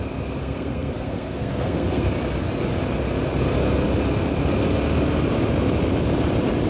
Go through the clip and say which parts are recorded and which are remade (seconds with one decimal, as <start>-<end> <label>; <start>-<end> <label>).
0.0-0.4 recorded; 0.4-2.1 remade; 2.1-6.7 recorded